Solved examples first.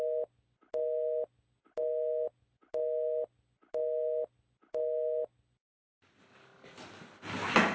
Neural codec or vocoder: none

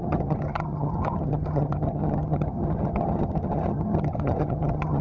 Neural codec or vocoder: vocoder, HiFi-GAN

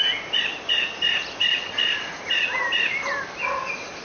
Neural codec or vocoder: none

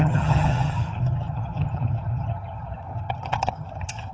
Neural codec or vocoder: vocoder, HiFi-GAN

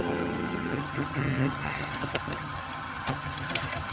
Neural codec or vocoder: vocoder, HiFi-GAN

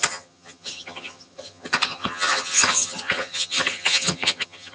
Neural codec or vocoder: vocoder, HiFi-GAN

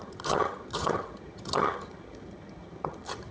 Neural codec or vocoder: vocoder, HiFi-GAN